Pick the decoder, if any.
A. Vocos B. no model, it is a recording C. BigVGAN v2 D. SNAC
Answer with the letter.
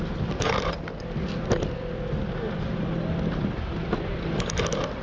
B